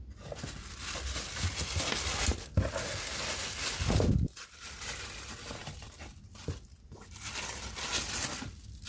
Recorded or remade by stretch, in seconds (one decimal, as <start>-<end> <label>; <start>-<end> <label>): 0.0-8.9 recorded